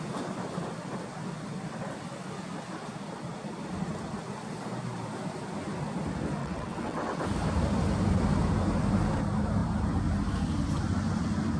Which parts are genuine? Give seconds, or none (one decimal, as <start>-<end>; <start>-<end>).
0.0-6.4; 7.2-11.6